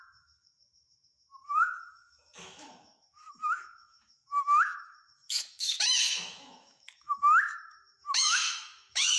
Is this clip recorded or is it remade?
remade